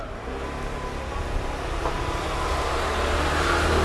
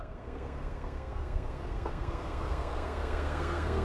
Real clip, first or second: first